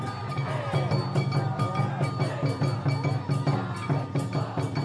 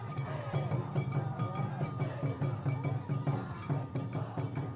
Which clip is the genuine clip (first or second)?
first